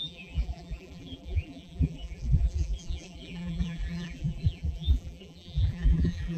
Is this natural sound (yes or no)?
no